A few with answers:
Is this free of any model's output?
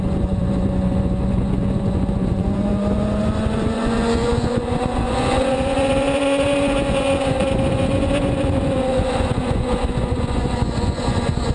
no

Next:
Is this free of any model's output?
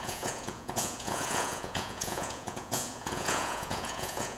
no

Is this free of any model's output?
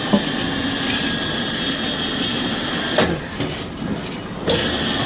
yes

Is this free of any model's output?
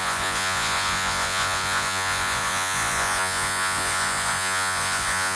no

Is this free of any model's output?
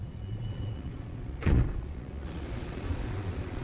no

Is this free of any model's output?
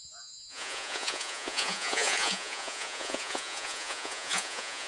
no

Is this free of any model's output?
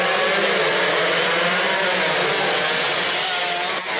yes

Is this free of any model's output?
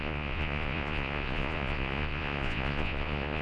no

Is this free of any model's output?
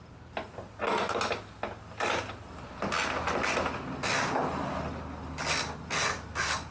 yes